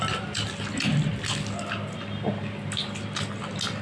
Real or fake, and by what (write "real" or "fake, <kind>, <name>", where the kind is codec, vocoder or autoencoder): real